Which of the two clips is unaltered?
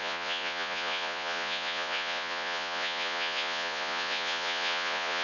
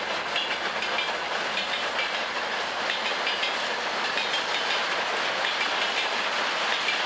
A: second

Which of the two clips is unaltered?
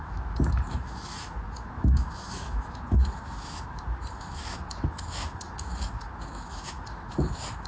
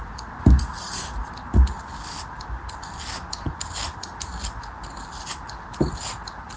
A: second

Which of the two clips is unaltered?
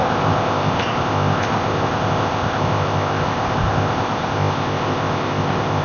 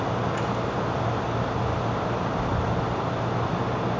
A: second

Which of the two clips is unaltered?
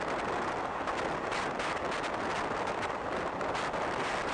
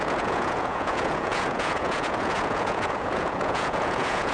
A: first